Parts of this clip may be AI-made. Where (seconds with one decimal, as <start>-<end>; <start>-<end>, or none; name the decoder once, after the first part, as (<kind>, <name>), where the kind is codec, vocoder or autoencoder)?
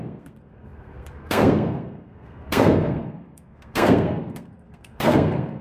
0.0-5.6 (codec, SNAC)